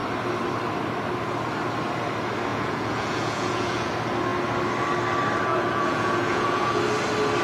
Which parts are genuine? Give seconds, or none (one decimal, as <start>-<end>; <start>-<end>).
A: 0.0-2.5; 3.9-5.5; 6.8-7.4